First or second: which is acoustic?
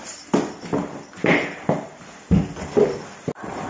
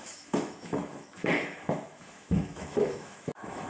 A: first